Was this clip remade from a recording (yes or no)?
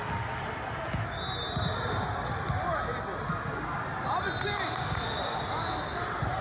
no